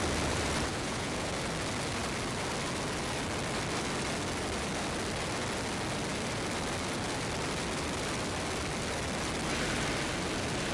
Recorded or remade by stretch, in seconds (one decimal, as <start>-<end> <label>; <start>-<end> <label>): 0.0-0.7 recorded; 0.7-1.3 remade; 1.3-10.7 recorded